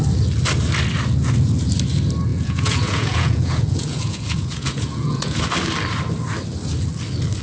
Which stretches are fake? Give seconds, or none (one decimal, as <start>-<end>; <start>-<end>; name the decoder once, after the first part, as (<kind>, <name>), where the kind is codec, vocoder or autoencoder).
2.3-5.4 (vocoder, Vocos)